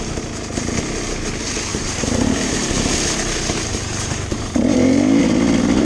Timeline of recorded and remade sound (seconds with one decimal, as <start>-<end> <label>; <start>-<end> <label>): 0.0-1.7 recorded; 1.7-2.7 remade; 2.7-3.7 recorded; 3.7-5.2 remade; 5.2-5.8 recorded